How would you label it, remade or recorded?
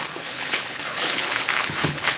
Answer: remade